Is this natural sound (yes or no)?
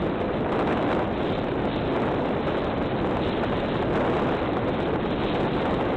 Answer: yes